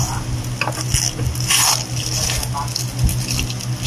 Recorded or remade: recorded